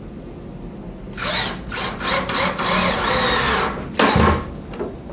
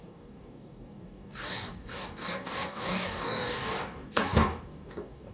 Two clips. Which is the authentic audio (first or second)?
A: first